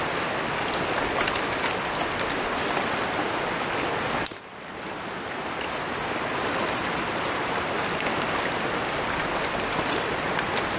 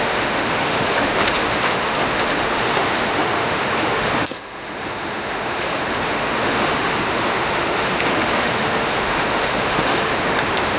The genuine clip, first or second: first